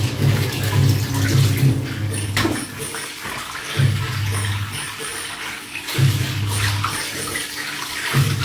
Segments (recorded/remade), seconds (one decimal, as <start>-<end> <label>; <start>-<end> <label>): 0.0-0.8 remade; 0.8-1.7 recorded; 1.7-8.4 remade